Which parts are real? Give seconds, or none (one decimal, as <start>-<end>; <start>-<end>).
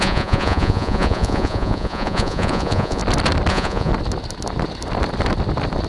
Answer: 3.0-3.5; 3.9-5.9